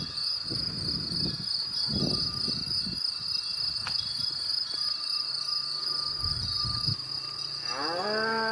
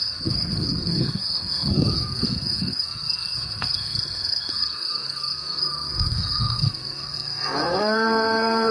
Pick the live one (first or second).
first